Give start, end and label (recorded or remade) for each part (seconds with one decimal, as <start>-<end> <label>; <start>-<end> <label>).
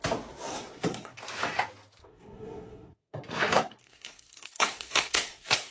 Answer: 0.0-0.5 recorded; 0.5-1.2 remade; 1.2-2.0 recorded; 2.0-5.7 remade